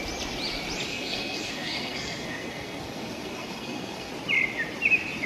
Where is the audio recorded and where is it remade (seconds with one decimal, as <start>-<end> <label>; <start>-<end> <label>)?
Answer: 0.0-0.9 recorded; 0.9-4.1 remade; 4.1-5.3 recorded